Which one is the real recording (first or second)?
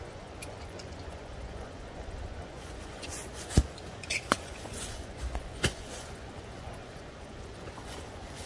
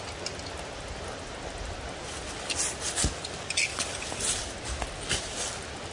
second